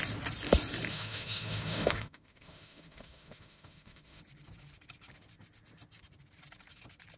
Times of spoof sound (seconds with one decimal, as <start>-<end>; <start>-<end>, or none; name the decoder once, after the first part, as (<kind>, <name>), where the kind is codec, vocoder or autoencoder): 0.9-4.2 (autoencoder, DAC-VAE)